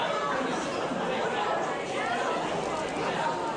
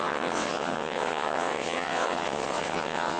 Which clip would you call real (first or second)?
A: first